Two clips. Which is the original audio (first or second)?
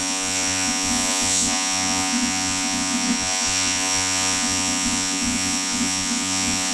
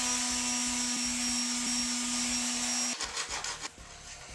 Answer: second